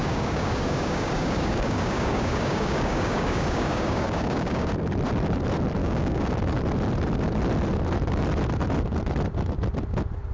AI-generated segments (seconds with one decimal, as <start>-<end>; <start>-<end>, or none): 0.0-4.7; 5.8-6.3